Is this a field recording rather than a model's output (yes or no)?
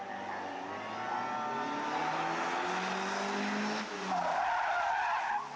yes